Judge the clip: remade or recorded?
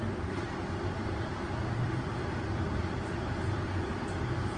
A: remade